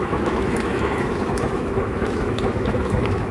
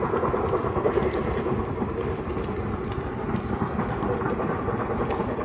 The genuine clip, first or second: second